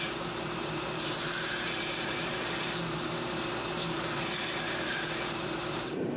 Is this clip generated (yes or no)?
yes